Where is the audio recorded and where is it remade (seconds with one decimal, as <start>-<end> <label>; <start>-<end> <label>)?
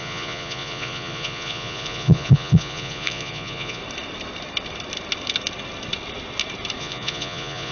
0.0-3.8 remade; 3.8-6.8 recorded; 6.8-7.7 remade